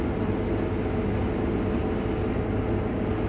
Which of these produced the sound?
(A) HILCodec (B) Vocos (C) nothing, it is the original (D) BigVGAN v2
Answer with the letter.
C